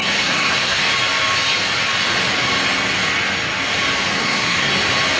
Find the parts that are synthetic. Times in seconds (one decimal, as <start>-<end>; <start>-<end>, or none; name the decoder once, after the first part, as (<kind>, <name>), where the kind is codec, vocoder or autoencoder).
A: 0.0-0.8 (codec, SNAC); 4.2-4.7